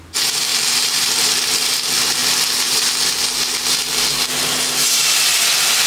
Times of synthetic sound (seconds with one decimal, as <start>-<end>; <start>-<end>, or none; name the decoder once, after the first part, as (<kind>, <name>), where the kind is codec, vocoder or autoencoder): 0.5-1.2 (vocoder, BigVGAN v2)